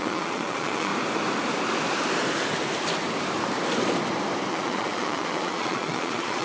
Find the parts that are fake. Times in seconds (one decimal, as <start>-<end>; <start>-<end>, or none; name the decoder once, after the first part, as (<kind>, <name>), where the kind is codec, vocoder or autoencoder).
0.0-0.9 (vocoder, Vocos); 4.5-6.4

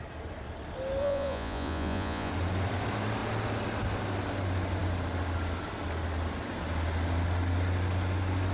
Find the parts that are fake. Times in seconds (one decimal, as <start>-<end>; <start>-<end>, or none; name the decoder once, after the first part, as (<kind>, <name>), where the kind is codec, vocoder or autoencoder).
1.0-2.3 (vocoder, Vocos)

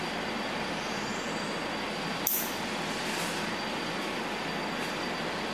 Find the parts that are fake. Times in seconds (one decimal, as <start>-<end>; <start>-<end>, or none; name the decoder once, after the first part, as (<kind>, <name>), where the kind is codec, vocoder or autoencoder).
none

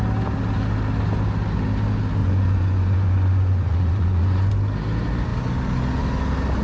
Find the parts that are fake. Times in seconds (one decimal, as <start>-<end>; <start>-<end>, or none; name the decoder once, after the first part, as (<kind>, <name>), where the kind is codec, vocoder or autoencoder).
2.2-4.5 (vocoder, Vocos)

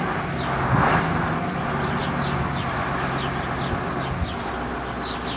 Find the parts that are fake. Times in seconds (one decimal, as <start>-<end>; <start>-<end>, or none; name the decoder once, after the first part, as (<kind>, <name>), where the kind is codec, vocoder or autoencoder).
none

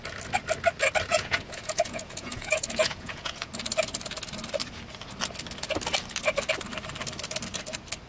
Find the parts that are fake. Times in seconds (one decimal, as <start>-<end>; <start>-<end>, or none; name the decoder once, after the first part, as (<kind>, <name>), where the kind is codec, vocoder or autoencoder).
1.1-3.5 (vocoder, Vocos)

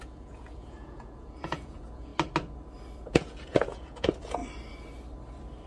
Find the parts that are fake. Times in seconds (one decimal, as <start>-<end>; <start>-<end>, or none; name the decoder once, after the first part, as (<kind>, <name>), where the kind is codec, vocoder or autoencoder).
0.0-2.1 (vocoder, Vocos); 3.0-4.4

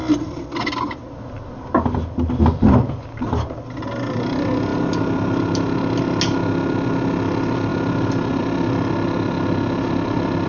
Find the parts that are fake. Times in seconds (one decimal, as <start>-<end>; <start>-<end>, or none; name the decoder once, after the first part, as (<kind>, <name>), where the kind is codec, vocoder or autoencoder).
none